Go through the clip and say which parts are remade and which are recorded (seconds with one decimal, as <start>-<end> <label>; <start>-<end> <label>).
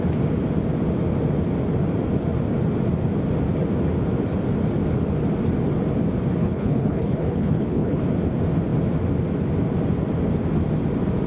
0.0-6.4 recorded; 6.4-8.0 remade; 8.0-11.3 recorded